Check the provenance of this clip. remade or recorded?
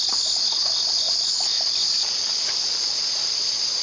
recorded